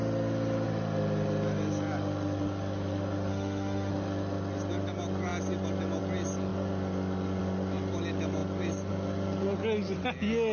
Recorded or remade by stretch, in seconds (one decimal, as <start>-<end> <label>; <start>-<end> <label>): 0.0-3.3 recorded; 3.3-3.9 remade; 3.9-10.5 recorded